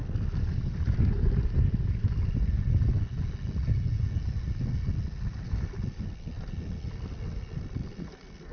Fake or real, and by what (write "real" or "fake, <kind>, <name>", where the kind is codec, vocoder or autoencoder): real